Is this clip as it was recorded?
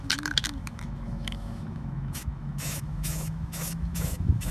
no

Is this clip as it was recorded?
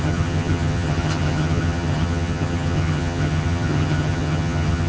no